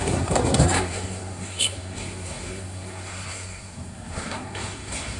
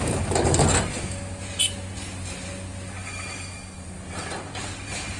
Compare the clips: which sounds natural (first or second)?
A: second